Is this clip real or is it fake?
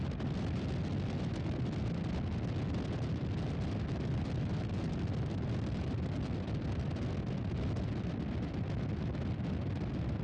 real